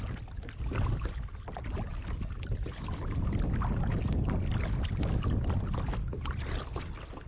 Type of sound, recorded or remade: recorded